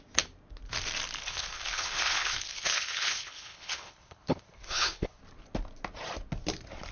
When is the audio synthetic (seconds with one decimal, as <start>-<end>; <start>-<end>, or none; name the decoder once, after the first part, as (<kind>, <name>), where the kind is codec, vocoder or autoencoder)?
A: 1.2-5.2 (codec, HILCodec)